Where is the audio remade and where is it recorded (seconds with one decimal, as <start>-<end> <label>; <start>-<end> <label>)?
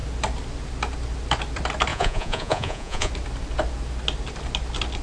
0.0-1.9 recorded; 1.9-3.1 remade; 3.1-5.0 recorded